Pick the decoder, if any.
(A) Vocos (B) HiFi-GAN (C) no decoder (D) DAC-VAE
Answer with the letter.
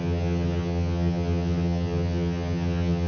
B